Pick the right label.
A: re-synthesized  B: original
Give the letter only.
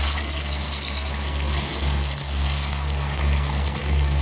A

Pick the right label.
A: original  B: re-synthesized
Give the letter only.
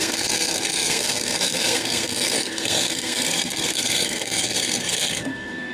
B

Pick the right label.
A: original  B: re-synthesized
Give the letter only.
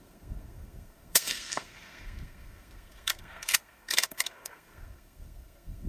B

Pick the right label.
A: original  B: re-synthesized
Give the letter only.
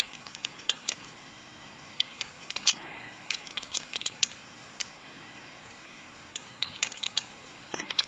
B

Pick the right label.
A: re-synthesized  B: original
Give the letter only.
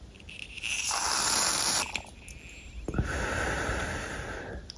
B